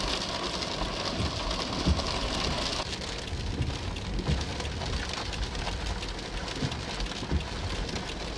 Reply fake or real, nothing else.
real